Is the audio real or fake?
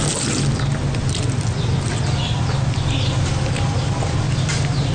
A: real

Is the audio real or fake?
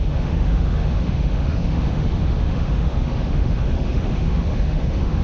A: fake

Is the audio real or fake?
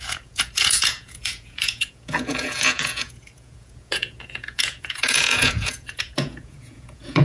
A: fake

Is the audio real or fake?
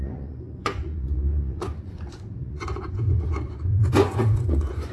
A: fake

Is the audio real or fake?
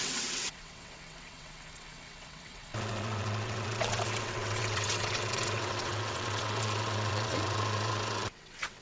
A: fake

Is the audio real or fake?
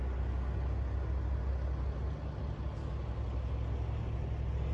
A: real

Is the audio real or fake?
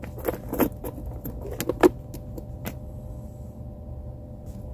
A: real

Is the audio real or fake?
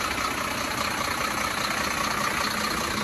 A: real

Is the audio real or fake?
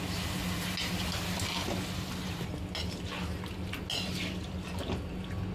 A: real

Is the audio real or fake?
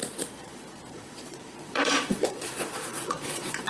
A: fake